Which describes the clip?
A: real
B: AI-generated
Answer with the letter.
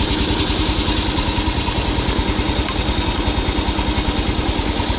A